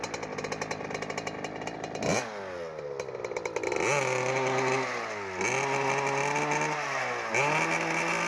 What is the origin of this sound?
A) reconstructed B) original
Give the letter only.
B